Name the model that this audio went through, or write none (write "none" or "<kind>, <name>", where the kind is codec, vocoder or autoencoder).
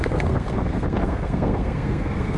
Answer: codec, SNAC